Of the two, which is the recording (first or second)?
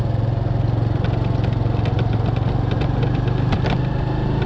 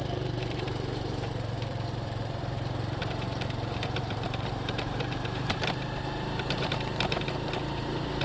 first